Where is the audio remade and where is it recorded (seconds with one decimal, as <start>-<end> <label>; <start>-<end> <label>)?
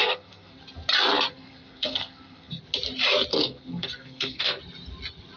0.0-0.6 remade; 0.6-1.3 recorded; 1.3-2.6 remade; 2.6-3.3 recorded; 3.3-4.6 remade; 4.6-5.4 recorded